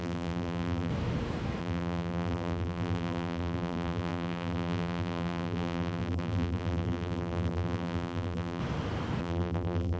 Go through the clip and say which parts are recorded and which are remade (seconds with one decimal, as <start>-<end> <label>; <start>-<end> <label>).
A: 0.0-0.9 remade; 0.9-1.6 recorded; 1.6-8.6 remade; 8.6-9.2 recorded; 9.2-10.0 remade